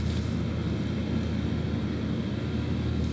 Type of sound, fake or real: real